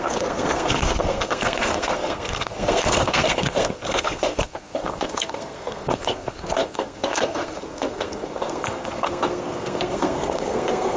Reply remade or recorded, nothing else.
remade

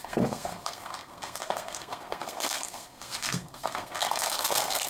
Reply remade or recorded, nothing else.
remade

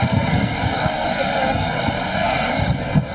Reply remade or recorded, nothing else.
remade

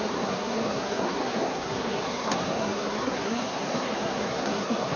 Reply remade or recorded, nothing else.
remade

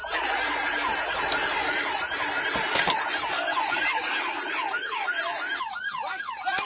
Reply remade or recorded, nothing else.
recorded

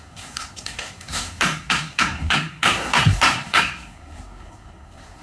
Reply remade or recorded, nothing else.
remade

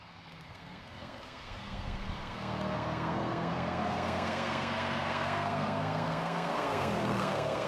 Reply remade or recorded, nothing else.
remade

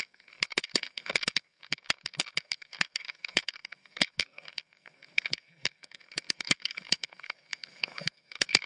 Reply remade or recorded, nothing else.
remade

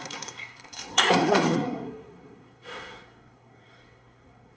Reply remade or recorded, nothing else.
remade